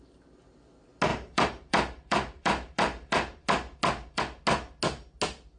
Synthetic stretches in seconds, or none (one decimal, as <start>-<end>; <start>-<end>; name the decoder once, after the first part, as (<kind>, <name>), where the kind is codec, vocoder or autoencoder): 1.1-4.2 (vocoder, BigVGAN v2)